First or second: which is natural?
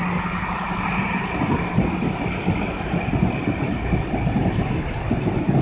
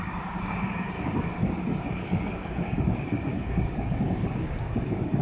first